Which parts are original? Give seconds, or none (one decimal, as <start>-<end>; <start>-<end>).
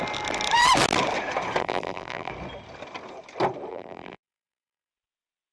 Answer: 0.0-1.6; 2.3-3.7; 4.9-5.5